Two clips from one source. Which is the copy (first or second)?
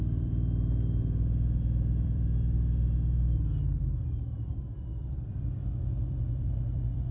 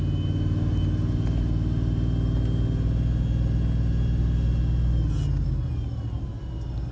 first